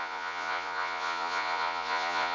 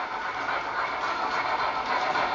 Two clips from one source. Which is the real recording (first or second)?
second